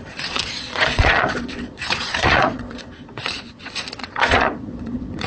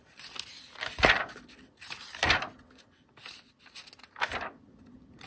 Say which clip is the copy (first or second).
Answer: first